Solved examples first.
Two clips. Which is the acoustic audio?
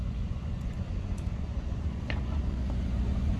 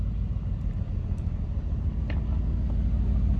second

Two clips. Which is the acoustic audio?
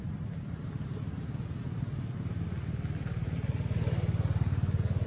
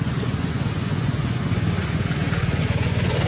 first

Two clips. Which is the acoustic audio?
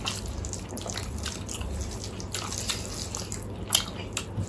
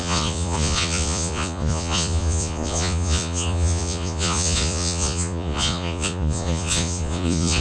first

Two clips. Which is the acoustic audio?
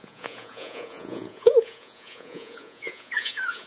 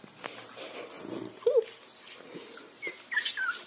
second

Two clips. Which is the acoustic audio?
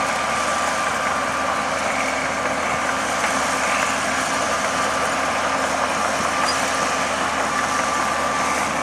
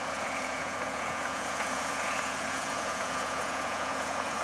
first